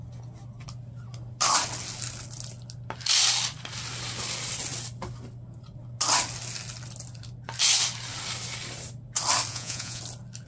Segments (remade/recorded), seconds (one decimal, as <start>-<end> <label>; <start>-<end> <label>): 0.0-9.5 recorded; 9.5-10.0 remade; 10.0-10.5 recorded